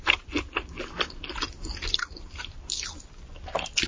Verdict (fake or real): real